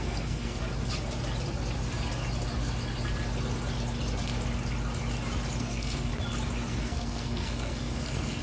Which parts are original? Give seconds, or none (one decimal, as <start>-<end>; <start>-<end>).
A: 0.6-5.6; 6.1-6.7